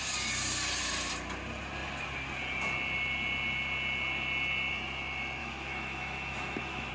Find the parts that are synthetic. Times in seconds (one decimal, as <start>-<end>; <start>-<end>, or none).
5.4-6.9